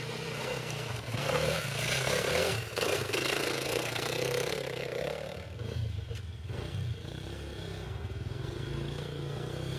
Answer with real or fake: fake